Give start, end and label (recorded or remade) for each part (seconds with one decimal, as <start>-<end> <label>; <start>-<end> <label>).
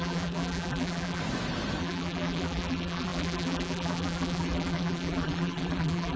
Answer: 0.0-1.2 remade; 1.2-1.8 recorded; 1.8-6.2 remade